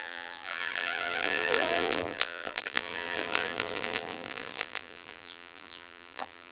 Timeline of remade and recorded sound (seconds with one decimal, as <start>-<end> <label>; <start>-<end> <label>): 0.0-6.5 remade